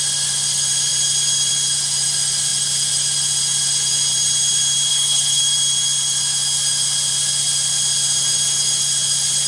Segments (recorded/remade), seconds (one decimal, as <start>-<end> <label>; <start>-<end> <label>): 0.0-4.9 recorded; 4.9-5.4 remade; 5.4-9.5 recorded